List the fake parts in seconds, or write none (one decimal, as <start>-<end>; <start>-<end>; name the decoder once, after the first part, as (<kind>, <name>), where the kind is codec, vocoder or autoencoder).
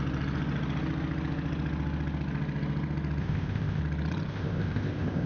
3.2-3.8 (codec, ZipCodec); 4.3-5.3